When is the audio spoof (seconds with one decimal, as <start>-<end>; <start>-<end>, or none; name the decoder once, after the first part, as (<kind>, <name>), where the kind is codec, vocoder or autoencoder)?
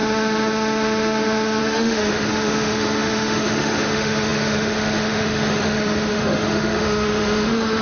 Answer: 0.0-7.8 (autoencoder, DAC-VAE)